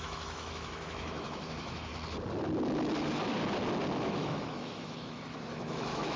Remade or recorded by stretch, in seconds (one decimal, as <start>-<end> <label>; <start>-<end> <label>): 0.0-1.9 remade; 1.9-4.0 recorded; 4.0-6.2 remade